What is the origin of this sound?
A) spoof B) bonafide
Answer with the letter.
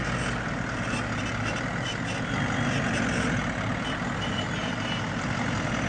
B